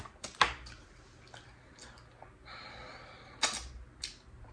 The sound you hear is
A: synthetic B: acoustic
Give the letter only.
B